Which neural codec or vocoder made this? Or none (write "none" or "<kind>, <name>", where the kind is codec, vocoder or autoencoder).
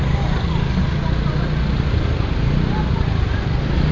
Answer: none